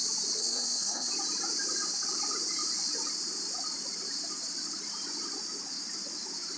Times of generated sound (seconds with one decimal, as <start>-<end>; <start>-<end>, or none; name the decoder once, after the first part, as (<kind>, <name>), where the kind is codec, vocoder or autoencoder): 0.4-1.1 (codec, SNAC)